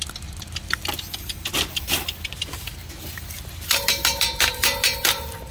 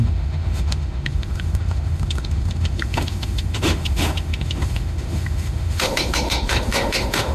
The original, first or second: first